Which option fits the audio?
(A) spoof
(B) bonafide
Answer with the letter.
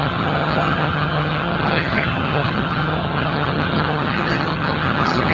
A